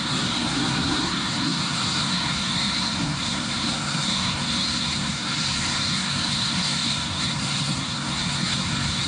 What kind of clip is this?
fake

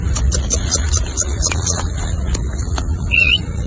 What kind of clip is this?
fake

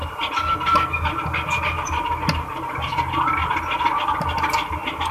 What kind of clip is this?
real